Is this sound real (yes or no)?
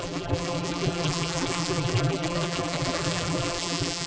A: no